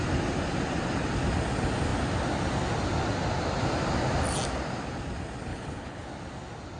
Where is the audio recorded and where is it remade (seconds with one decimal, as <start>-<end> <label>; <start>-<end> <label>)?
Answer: 0.0-5.5 recorded; 5.5-6.1 remade; 6.1-6.8 recorded